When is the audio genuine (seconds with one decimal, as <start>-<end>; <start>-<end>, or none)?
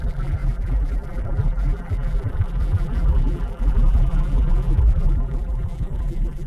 none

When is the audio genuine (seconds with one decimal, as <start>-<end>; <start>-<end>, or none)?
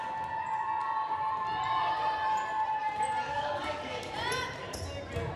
0.0-3.3; 4.1-5.4